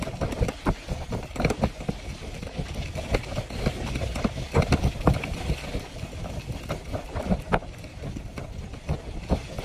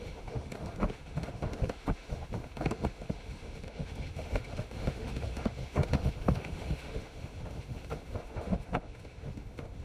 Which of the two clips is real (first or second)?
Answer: first